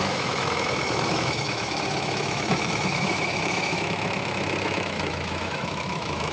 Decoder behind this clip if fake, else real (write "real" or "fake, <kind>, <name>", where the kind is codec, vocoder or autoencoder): fake, autoencoder, DAC-VAE